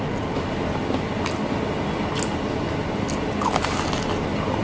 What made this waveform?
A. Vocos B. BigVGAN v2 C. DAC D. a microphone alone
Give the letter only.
D